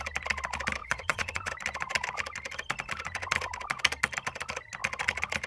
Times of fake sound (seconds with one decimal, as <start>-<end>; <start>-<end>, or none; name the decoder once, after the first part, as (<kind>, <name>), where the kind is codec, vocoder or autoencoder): 0.8-1.5 (vocoder, Vocos)